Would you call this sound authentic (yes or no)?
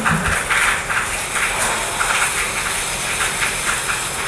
yes